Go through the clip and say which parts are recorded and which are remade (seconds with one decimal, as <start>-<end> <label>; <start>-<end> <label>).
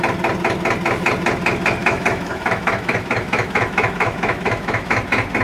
0.0-1.8 recorded; 1.8-5.0 remade; 5.0-5.4 recorded